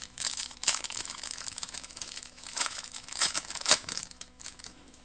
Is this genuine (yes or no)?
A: no